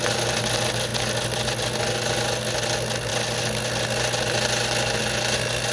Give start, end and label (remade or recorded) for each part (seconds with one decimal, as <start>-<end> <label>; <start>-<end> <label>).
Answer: 0.0-5.7 recorded